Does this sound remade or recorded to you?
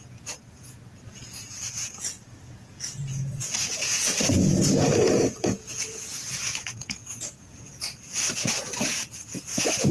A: remade